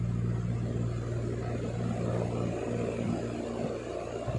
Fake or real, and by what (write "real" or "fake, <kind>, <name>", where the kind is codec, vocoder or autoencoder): real